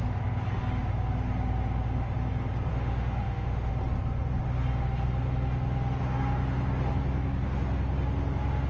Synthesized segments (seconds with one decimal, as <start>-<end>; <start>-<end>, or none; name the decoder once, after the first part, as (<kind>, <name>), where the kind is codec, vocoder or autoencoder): 2.7-3.7 (autoencoder, DAC-VAE)